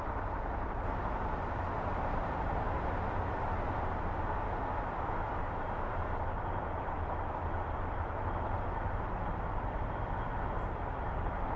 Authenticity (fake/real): real